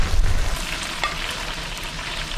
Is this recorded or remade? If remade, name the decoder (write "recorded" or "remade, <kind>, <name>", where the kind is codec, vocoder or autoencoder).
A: recorded